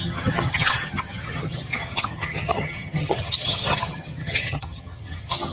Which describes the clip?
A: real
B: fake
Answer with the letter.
B